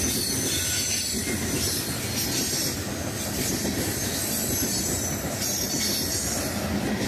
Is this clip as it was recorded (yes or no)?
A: yes